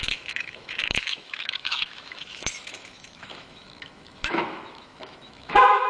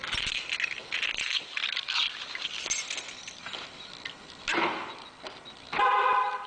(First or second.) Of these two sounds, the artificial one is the first